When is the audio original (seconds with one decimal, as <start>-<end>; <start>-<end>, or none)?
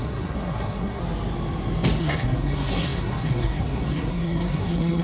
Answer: 1.0-2.0